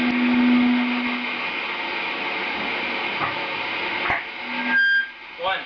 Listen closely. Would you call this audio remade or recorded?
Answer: recorded